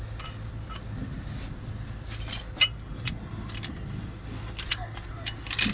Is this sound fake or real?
real